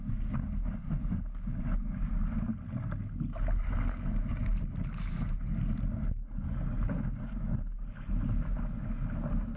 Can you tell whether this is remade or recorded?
recorded